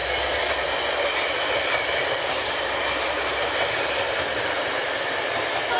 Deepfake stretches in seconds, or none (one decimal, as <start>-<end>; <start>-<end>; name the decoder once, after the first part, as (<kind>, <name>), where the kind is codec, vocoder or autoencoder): none